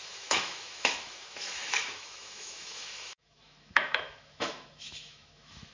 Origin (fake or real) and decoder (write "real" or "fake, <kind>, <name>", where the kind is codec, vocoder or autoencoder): fake, autoencoder, DAC-VAE